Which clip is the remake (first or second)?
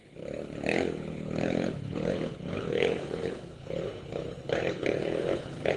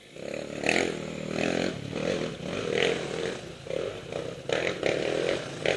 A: first